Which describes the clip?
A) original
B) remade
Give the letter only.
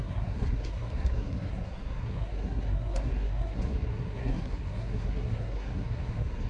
B